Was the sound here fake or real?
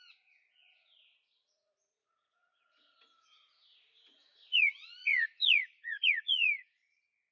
fake